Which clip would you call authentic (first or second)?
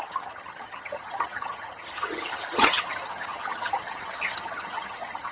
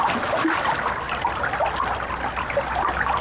second